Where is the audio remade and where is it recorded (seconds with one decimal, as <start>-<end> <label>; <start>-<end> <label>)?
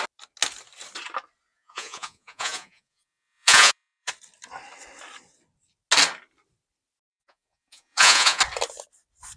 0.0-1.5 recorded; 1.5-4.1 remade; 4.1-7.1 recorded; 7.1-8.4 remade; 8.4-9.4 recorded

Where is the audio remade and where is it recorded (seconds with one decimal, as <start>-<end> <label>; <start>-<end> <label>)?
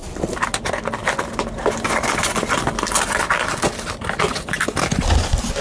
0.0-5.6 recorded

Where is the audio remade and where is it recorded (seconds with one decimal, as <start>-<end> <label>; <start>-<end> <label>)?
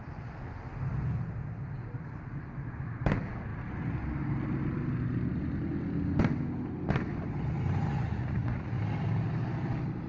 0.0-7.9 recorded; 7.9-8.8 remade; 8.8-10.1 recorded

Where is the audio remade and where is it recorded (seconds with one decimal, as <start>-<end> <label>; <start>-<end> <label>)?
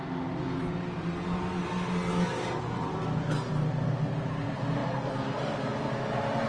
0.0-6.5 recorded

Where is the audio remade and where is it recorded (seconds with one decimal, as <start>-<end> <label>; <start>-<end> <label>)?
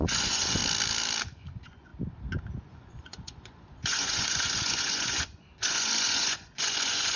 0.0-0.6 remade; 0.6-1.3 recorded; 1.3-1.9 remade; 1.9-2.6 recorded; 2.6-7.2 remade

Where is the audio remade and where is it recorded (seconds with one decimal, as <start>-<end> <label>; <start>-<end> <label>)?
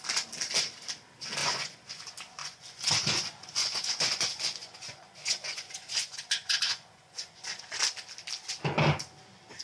0.0-1.4 recorded; 1.4-2.0 remade; 2.0-2.4 recorded; 2.4-7.6 remade; 7.6-9.6 recorded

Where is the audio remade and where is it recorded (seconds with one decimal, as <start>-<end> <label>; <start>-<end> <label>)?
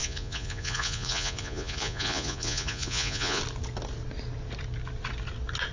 0.0-3.4 remade; 3.4-5.7 recorded